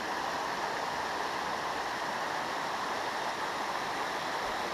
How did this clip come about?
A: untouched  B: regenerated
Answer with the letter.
A